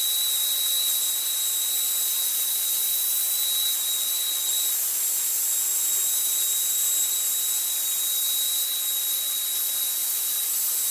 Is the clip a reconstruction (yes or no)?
no